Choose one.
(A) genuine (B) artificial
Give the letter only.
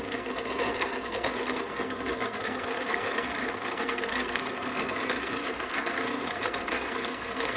B